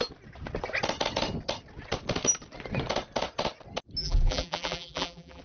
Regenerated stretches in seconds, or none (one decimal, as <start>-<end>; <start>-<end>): 4.0-5.4